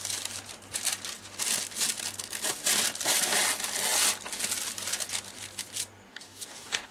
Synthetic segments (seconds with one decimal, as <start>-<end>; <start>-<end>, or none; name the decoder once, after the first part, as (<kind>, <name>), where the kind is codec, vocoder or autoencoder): 6.1-6.9 (codec, DAC)